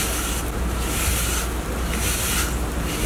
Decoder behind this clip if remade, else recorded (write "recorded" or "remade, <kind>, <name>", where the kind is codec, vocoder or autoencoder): recorded